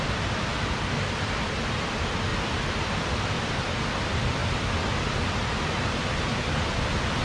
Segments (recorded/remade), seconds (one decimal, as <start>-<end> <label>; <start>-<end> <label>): 0.0-2.3 recorded; 2.3-3.5 remade; 3.5-7.2 recorded